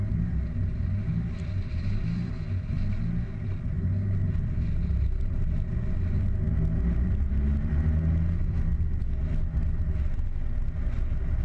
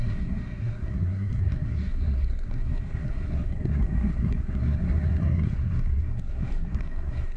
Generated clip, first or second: second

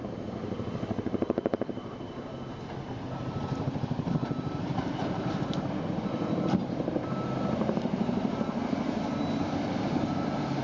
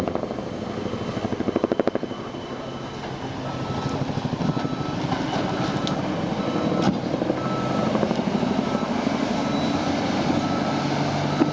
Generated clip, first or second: first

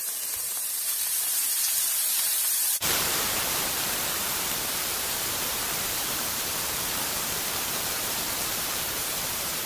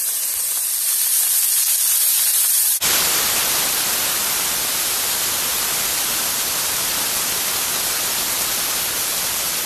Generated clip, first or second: first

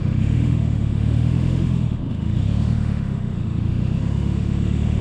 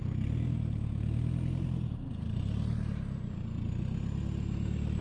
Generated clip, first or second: first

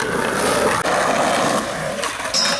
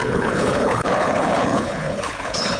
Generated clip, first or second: second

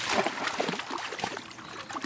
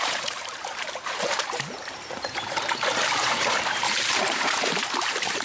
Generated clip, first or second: second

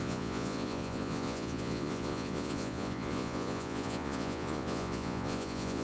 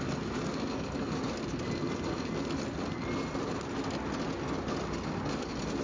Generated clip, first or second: first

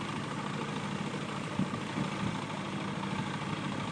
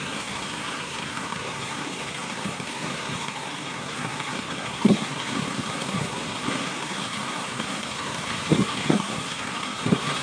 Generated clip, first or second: second